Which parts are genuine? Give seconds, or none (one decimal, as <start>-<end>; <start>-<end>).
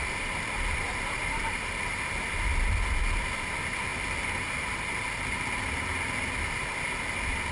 0.0-7.5